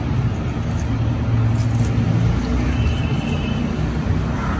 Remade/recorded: recorded